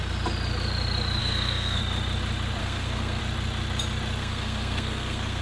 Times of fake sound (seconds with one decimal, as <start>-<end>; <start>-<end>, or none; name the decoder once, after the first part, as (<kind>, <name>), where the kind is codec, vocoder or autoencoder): 1.2-1.8 (codec, SNAC); 2.6-3.2; 4.2-5.4